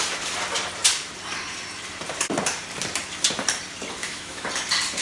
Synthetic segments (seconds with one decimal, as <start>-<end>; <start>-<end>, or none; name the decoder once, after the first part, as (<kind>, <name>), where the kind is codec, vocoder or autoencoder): 4.0-4.5 (autoencoder, DAC-VAE)